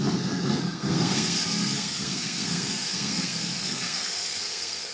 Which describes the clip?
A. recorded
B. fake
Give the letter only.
B